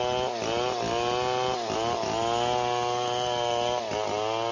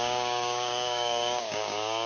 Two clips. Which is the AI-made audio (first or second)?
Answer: second